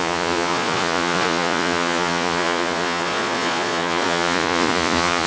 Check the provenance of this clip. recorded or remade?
remade